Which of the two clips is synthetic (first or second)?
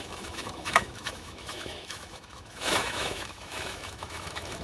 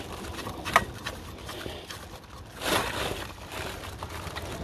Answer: first